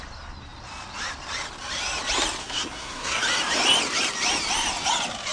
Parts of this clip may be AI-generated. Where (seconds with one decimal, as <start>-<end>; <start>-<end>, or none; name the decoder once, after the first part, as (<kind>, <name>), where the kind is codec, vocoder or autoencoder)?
2.4-3.2 (codec, SNAC)